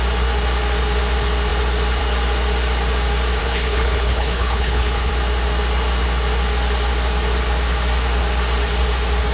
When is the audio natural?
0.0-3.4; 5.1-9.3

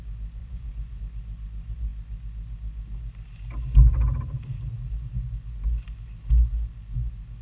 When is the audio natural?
0.0-0.4; 1.0-7.4

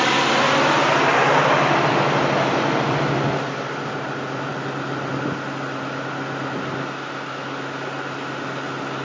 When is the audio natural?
0.0-9.0

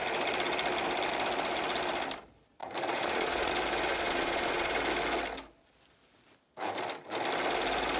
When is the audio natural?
0.0-2.6; 3.5-3.9; 4.7-8.0

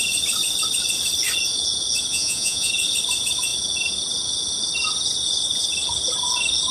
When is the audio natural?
0.0-2.1; 2.7-6.7

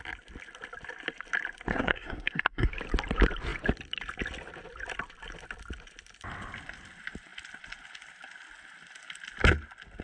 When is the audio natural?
0.0-1.7; 2.7-10.0